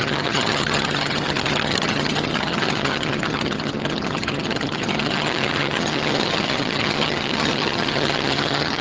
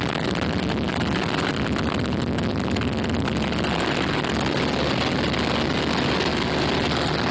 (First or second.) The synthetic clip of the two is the first